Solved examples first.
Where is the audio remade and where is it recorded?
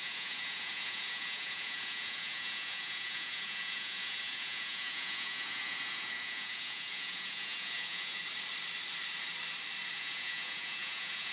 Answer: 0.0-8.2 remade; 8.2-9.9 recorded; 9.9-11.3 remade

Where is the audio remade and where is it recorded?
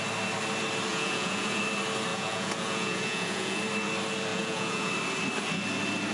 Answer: 0.0-0.9 recorded; 0.9-1.6 remade; 1.6-2.1 recorded; 2.1-3.6 remade; 3.6-4.3 recorded; 4.3-4.9 remade; 4.9-6.1 recorded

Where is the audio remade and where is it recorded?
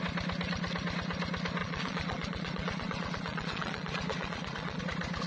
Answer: 0.0-1.6 recorded; 1.6-4.8 remade; 4.8-5.3 recorded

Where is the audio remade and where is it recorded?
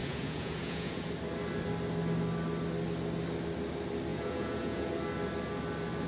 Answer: 0.0-1.1 remade; 1.1-4.1 recorded; 4.1-4.9 remade; 4.9-6.1 recorded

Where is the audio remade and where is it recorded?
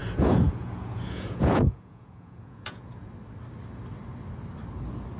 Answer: 0.0-3.1 remade; 3.1-5.2 recorded